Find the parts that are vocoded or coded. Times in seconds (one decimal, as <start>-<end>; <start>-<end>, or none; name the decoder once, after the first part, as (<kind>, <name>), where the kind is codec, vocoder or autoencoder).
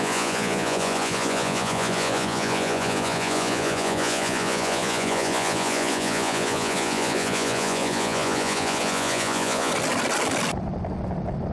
0.0-9.7 (vocoder, Vocos)